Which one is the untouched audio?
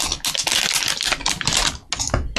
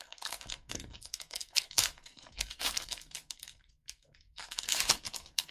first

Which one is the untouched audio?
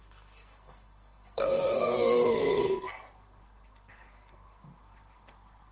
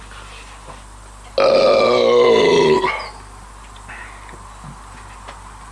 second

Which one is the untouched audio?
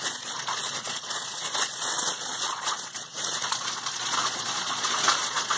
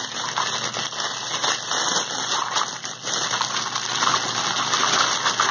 second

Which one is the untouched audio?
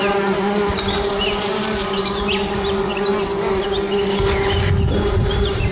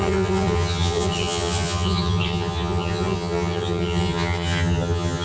first